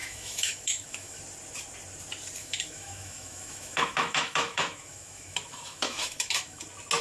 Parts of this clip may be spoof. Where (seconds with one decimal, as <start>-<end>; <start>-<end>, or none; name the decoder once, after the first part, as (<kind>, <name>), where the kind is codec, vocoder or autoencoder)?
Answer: 0.0-1.2 (autoencoder, DAC-VAE); 2.4-6.6